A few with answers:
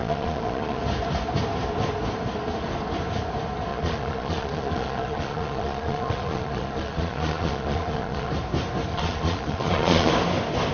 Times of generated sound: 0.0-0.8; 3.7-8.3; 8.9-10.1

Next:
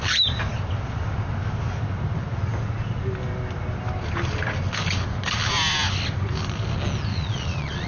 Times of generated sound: 7.1-7.9

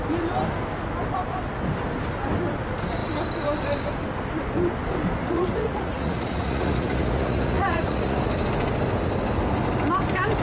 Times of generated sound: 5.2-8.2

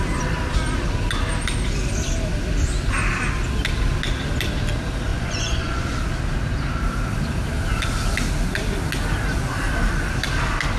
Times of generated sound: 5.1-6.0

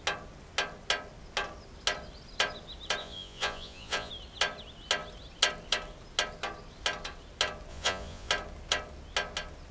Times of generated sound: 3.0-4.1; 7.7-8.3

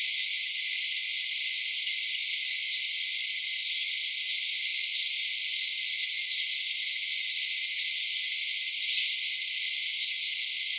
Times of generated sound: none

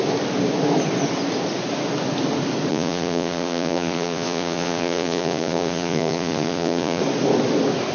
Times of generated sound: 2.7-7.0

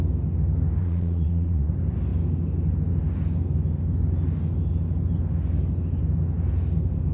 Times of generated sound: 0.8-1.7